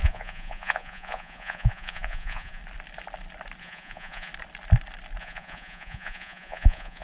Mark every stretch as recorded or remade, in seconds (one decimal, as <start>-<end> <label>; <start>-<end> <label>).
0.0-2.6 remade; 2.6-3.6 recorded; 3.6-4.3 remade; 4.3-5.2 recorded; 5.2-7.0 remade